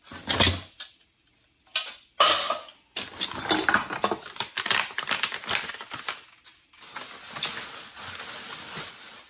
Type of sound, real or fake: real